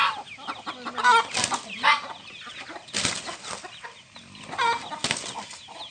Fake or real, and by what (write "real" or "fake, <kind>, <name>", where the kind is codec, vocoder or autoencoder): real